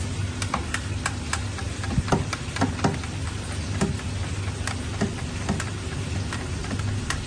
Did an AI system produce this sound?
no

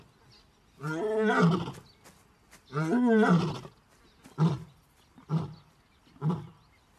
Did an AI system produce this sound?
no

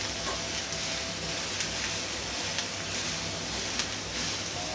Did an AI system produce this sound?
no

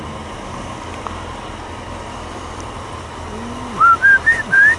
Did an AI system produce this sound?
no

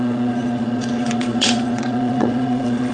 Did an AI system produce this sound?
yes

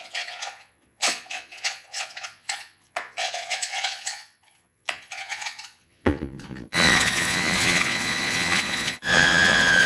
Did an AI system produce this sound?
yes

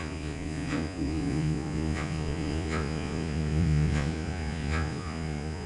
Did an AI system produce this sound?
yes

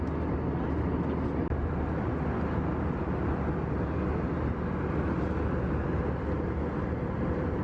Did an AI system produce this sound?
no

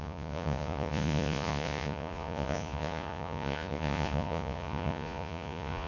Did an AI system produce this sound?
yes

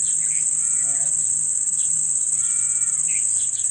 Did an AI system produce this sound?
yes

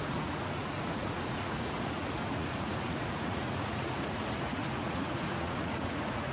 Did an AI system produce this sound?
yes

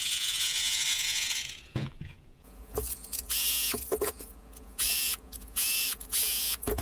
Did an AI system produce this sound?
yes